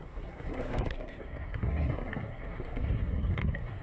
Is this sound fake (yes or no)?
yes